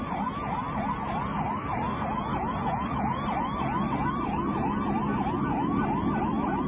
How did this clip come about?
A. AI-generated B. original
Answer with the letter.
B